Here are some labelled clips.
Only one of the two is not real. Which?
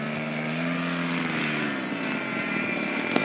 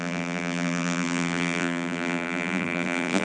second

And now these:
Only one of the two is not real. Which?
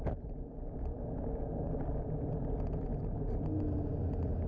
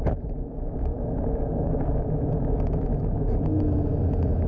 second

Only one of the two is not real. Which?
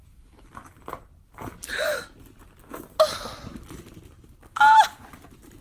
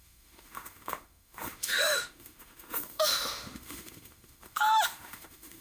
second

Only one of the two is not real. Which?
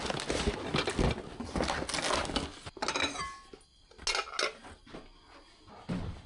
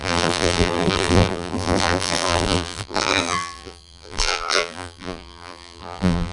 second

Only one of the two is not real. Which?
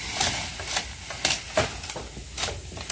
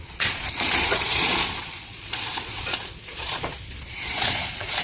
second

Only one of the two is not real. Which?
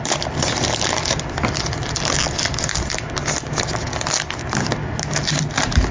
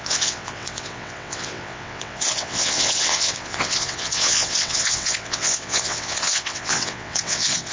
second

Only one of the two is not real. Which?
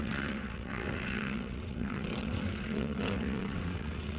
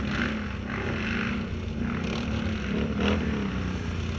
first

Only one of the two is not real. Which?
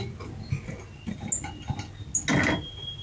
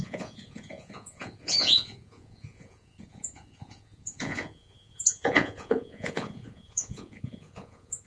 second